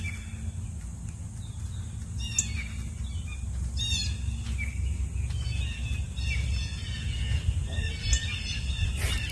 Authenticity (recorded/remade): recorded